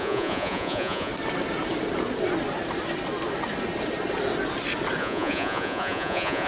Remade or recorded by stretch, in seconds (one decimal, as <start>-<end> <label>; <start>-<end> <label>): 0.0-1.1 remade; 1.1-5.0 recorded; 5.0-6.5 remade